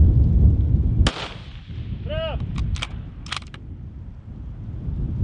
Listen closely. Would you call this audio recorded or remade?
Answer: recorded